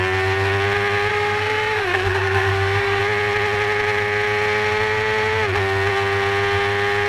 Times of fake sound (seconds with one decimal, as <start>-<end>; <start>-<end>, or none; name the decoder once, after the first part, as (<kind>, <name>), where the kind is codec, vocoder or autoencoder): 1.1-3.0 (codec, SNAC)